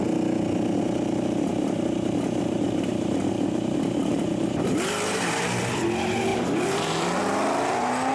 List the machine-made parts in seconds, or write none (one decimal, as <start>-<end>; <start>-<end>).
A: 1.5-5.6; 6.3-7.2